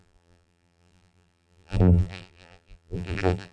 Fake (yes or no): yes